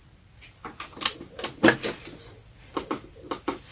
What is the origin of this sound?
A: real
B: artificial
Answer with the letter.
A